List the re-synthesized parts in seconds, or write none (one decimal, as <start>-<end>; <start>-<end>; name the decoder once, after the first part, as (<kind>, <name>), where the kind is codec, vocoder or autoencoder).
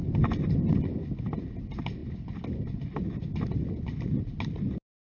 none